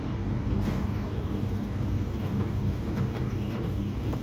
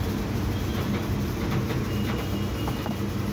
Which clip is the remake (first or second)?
first